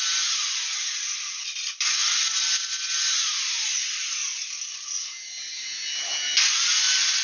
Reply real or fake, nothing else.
real